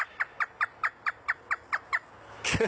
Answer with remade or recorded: recorded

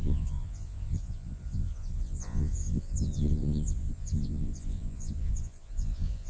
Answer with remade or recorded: remade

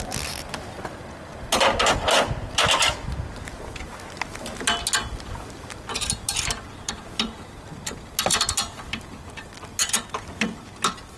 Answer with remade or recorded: recorded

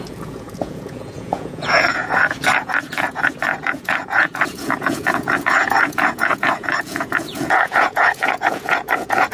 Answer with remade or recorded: remade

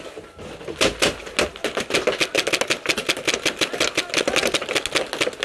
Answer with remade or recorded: recorded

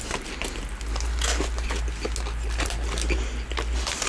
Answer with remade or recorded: recorded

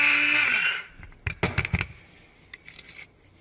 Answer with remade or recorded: recorded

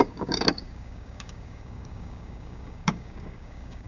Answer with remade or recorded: remade